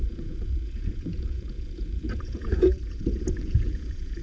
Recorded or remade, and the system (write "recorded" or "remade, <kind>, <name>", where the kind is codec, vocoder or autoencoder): remade, vocoder, Vocos